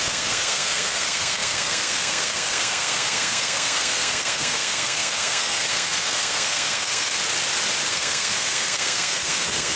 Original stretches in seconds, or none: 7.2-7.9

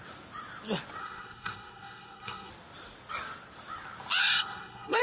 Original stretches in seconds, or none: 0.0-1.0; 2.5-4.2

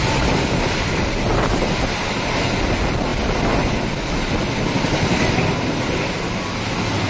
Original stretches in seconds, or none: 0.0-7.1

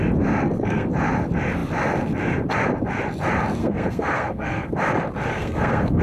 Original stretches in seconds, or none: 0.0-0.4; 0.9-3.6; 4.7-5.3

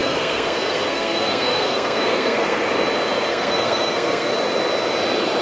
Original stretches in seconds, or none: 2.6-3.3; 4.3-5.4

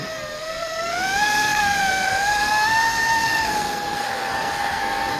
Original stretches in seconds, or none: none